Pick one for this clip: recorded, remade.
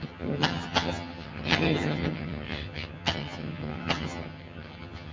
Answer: remade